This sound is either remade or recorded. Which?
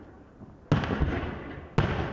recorded